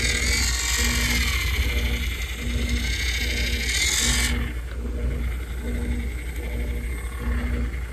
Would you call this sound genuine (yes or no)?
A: yes